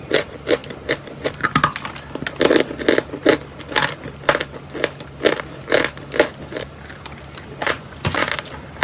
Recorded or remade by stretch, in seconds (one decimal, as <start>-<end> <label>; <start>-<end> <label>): 0.0-7.6 recorded; 7.6-8.3 remade; 8.3-8.8 recorded